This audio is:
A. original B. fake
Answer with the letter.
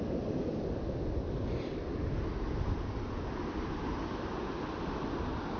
A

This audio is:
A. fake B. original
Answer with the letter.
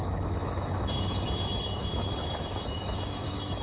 A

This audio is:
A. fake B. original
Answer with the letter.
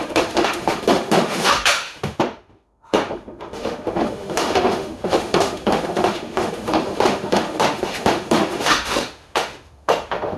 A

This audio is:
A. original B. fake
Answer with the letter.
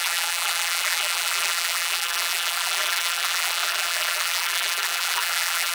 B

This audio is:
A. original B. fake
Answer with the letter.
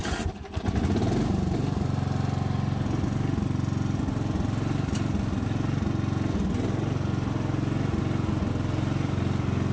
A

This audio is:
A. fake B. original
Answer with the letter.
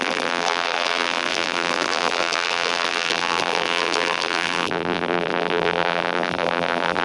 A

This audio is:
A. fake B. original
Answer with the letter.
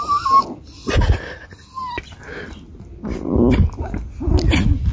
B